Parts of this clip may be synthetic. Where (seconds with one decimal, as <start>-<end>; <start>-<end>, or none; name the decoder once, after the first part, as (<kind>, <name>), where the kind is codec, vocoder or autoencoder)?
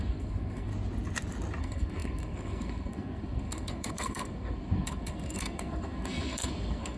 0.0-0.7 (codec, SNAC); 1.6-7.0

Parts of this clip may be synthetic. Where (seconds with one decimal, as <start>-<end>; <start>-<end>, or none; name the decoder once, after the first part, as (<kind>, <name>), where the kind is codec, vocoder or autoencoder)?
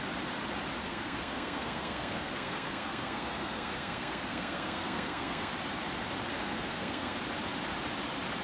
0.8-5.5 (codec, SNAC); 6.3-7.2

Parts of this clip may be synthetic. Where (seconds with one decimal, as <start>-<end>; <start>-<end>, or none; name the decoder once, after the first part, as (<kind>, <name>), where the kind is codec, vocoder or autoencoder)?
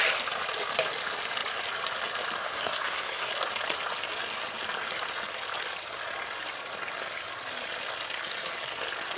2.4-3.3 (codec, SNAC)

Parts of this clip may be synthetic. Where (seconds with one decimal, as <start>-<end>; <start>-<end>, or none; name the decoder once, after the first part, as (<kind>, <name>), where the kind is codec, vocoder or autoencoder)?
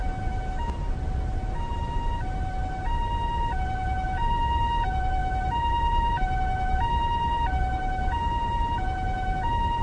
none